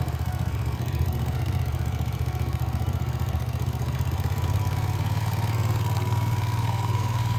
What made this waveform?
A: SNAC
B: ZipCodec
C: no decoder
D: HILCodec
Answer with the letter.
A